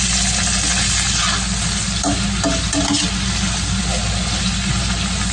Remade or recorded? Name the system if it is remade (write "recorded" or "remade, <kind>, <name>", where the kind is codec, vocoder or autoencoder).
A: recorded